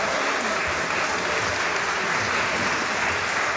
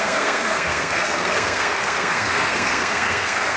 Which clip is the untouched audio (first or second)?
first